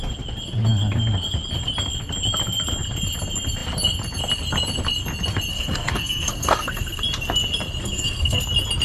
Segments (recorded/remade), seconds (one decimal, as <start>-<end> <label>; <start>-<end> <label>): 0.0-5.5 recorded; 5.5-7.0 remade; 7.0-7.8 recorded; 7.8-8.4 remade; 8.4-8.8 recorded